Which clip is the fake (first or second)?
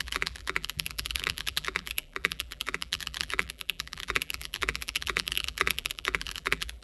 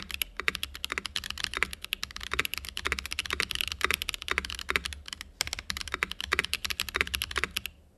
first